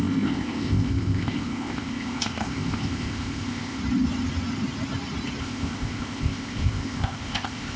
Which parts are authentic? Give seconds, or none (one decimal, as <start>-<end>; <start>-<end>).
3.8-5.4